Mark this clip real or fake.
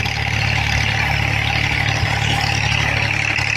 real